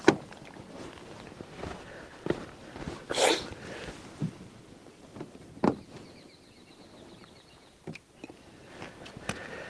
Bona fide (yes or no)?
yes